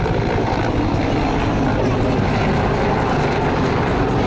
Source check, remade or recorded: recorded